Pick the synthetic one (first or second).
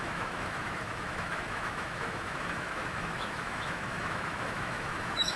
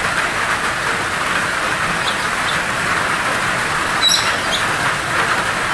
first